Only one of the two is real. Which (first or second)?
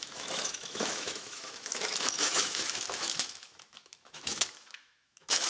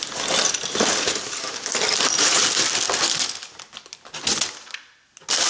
second